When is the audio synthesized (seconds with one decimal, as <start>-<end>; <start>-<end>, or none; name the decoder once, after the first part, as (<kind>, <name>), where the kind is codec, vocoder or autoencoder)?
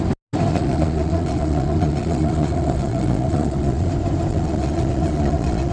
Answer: 0.5-3.9 (vocoder, Vocos); 4.3-5.7